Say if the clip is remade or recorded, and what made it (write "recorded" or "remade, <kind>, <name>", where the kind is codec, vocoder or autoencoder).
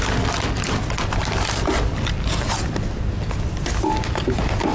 recorded